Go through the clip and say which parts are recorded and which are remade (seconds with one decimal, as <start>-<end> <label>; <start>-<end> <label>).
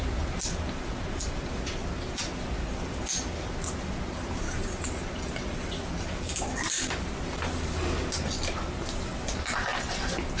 0.0-10.4 recorded